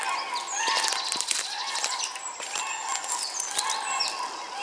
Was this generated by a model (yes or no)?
no